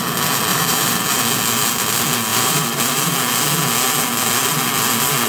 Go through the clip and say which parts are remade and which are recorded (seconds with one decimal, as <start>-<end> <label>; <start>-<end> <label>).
0.0-0.5 recorded; 0.5-1.2 remade; 1.2-2.3 recorded; 2.3-3.3 remade; 3.3-5.3 recorded